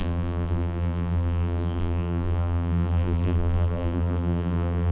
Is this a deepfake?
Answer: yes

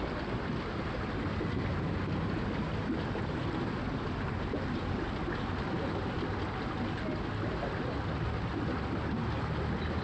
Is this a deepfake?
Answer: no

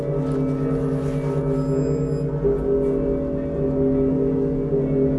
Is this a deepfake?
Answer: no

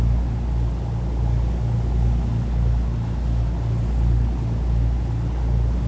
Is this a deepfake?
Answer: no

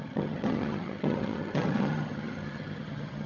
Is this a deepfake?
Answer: yes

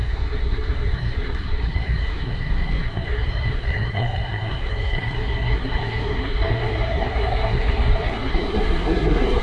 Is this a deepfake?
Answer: yes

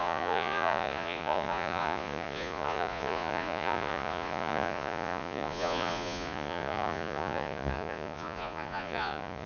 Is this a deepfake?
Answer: yes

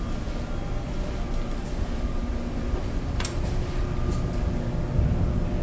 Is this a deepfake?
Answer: no